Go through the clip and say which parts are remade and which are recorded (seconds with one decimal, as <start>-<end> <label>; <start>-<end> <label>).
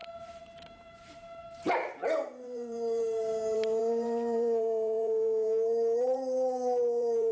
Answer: 0.0-7.3 remade